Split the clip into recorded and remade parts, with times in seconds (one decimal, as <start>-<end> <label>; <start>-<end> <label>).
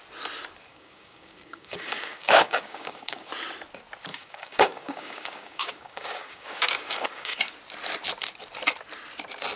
0.0-0.7 recorded; 0.7-3.3 remade; 3.3-4.1 recorded; 4.1-7.4 remade; 7.4-9.6 recorded